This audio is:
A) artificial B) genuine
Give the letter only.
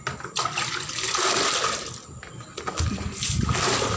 B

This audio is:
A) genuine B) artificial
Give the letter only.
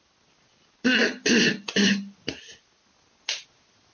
A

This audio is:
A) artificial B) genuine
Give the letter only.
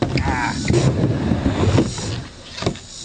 B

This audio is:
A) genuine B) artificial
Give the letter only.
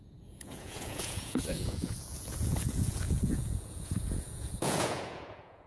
B